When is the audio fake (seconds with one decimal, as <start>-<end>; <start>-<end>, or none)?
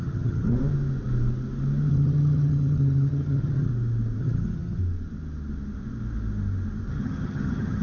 0.0-0.5; 1.9-3.7; 4.2-4.8; 6.9-7.8